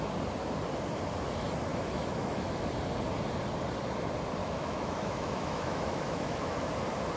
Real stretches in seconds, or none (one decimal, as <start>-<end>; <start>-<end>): 0.0-1.7; 2.7-4.4; 6.7-7.2